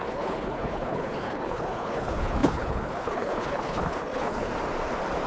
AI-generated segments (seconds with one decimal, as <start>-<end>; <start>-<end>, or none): 0.0-4.5